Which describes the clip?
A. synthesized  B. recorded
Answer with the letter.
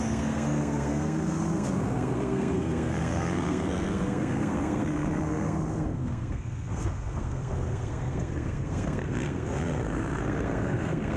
A